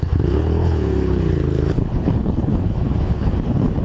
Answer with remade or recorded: remade